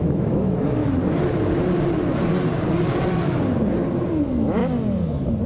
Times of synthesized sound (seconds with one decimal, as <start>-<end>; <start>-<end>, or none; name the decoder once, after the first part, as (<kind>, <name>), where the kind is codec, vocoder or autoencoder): 0.0-0.8 (autoencoder, DAC-VAE); 4.1-4.6